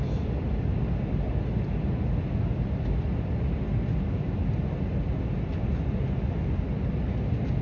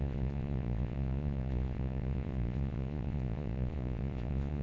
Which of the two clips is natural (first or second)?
first